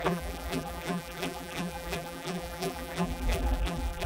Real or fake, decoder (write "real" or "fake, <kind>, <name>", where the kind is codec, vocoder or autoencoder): fake, vocoder, BigVGAN v2